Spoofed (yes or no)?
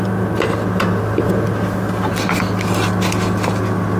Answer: no